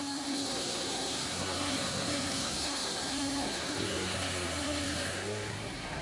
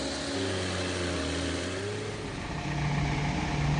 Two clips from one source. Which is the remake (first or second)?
first